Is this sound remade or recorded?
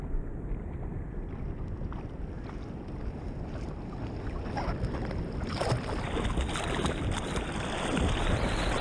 recorded